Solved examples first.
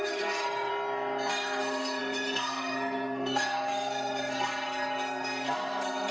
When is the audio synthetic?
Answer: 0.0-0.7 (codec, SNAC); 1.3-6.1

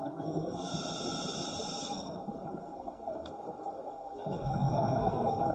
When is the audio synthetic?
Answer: 0.0-0.7 (codec, SNAC); 1.8-5.5